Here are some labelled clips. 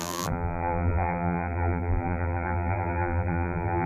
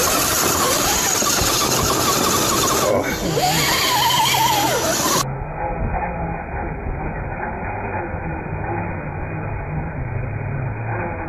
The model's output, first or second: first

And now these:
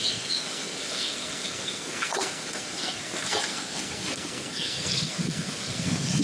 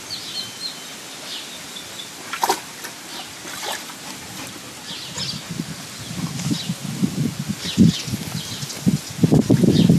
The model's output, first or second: first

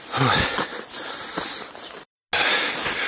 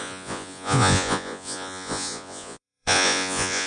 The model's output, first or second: second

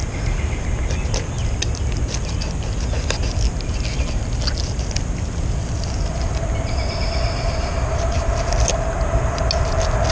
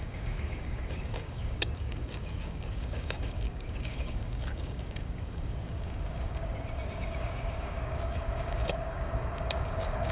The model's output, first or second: second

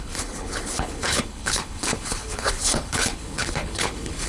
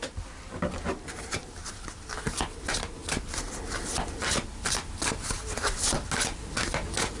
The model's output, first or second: first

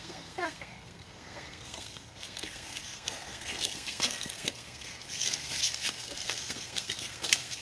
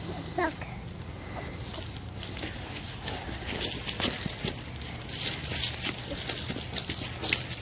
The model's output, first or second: first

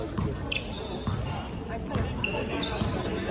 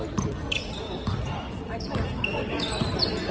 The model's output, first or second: second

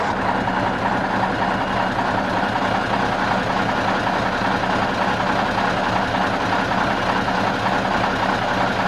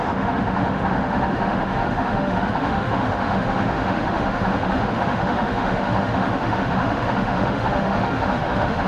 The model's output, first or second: second